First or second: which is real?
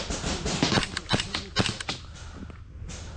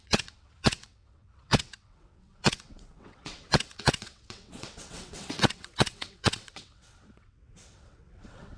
first